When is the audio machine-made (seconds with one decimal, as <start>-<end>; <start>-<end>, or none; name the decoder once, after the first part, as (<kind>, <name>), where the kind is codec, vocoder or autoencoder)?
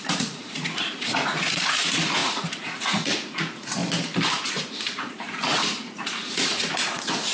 0.0-3.8 (vocoder, Vocos); 4.5-7.3